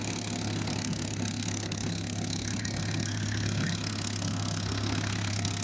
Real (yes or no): no